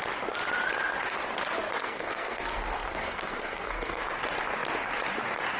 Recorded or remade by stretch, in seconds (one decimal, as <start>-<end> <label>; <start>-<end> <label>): 0.0-1.8 recorded; 1.8-4.0 remade; 4.0-5.6 recorded